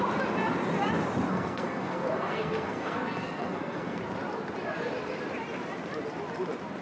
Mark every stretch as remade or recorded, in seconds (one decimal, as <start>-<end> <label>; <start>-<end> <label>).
0.0-1.3 recorded; 1.3-4.0 remade; 4.0-6.8 recorded